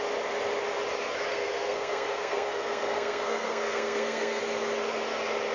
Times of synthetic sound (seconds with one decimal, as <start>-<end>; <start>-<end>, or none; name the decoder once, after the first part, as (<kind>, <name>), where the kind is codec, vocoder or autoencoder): 1.3-4.4 (codec, SNAC)